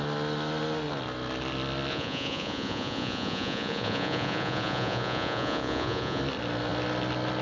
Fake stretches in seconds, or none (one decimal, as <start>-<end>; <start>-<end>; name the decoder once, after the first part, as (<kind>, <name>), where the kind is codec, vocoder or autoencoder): 1.9-6.2 (vocoder, Vocos)